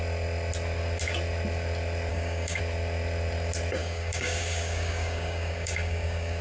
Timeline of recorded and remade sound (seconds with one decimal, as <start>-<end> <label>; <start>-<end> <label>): 0.0-2.1 recorded; 2.1-2.6 remade; 2.6-3.8 recorded; 3.8-6.4 remade